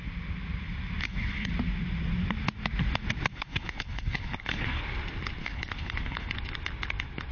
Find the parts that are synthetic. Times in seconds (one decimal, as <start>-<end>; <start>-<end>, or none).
1.0-1.5; 3.3-4.8; 5.4-6.3